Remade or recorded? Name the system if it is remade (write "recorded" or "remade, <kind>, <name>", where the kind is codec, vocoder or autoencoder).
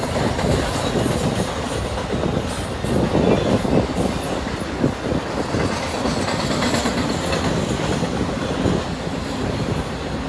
recorded